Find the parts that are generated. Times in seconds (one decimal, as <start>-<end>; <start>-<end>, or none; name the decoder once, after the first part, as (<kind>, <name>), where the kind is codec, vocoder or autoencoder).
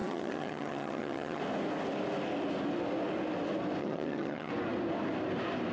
0.0-1.4 (vocoder, HiFi-GAN); 3.8-4.5